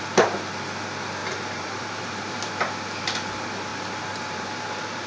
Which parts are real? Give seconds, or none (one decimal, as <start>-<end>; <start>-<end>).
0.0-1.2; 2.5-3.7